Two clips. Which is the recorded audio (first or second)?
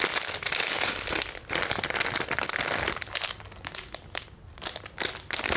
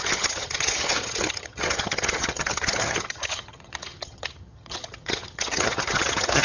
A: first